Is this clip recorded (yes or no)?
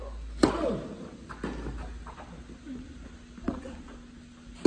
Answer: yes